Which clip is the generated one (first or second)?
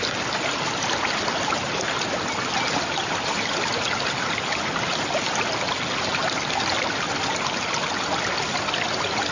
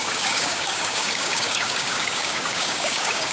second